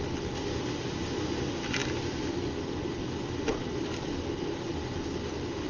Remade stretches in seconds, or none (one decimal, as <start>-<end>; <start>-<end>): none